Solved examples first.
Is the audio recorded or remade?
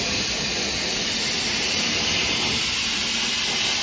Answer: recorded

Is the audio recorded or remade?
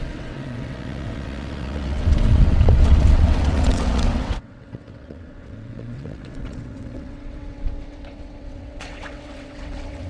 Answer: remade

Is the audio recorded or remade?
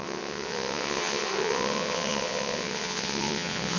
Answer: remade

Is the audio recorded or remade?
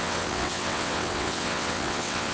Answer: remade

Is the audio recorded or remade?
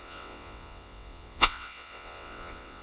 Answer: remade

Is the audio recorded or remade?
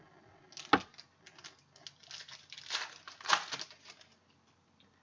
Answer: recorded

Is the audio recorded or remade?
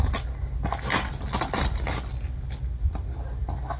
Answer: recorded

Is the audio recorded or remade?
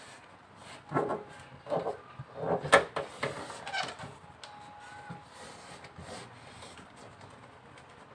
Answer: recorded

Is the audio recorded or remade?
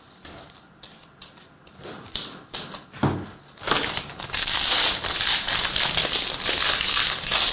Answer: recorded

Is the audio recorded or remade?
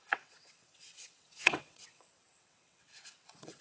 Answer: remade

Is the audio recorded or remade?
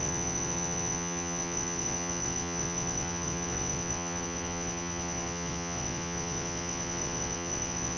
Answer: remade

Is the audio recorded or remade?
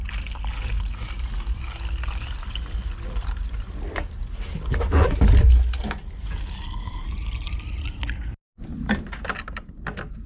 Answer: recorded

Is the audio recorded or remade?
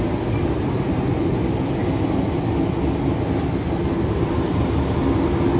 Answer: recorded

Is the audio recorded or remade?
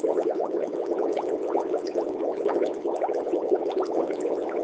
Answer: remade